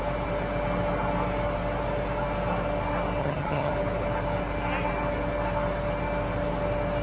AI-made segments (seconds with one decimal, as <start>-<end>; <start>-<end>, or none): 3.2-3.7